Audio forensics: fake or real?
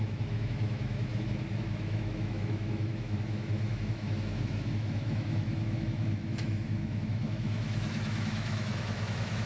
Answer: fake